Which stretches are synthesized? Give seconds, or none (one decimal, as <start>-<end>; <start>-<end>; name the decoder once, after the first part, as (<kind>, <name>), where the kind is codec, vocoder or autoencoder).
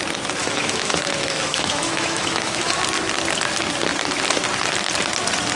0.4-2.8 (autoencoder, DAC-VAE)